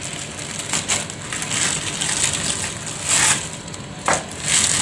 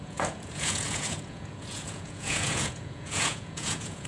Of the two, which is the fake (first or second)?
second